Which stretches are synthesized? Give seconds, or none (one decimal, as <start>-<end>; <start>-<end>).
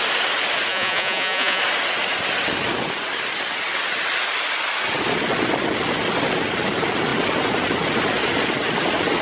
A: 0.7-1.6